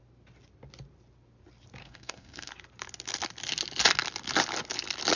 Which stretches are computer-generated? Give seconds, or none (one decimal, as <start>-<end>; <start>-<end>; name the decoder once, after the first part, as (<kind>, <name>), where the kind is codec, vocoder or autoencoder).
1.8-2.5 (codec, SNAC)